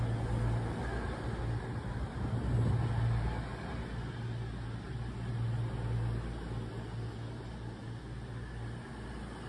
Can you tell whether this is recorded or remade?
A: recorded